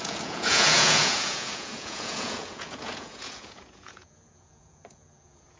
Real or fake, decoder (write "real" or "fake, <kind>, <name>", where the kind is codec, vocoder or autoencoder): fake, vocoder, Vocos